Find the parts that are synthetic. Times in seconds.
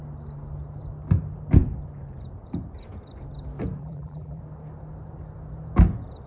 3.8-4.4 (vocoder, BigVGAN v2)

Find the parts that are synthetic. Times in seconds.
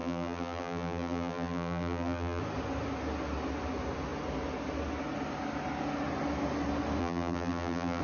0.0-2.4 (vocoder, BigVGAN v2); 7.0-8.0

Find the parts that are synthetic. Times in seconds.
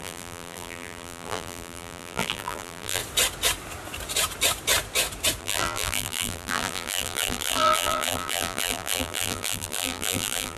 0.0-3.0 (vocoder, BigVGAN v2); 5.4-10.6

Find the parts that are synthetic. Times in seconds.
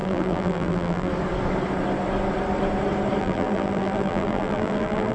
0.0-1.1 (vocoder, BigVGAN v2); 3.2-5.1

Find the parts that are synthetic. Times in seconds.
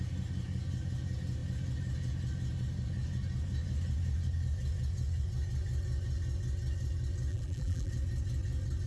7.3-7.9 (vocoder, BigVGAN v2)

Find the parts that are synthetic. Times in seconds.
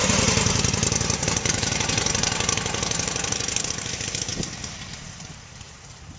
0.0-4.3 (vocoder, BigVGAN v2); 5.2-6.2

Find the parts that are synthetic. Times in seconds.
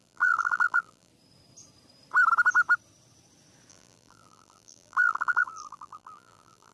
0.0-1.1 (vocoder, BigVGAN v2); 3.7-6.7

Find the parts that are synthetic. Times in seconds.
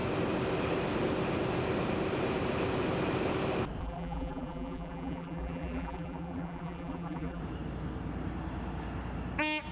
3.8-7.4 (vocoder, BigVGAN v2)